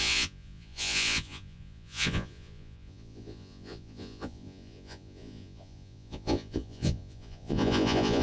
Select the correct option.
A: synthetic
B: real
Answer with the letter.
A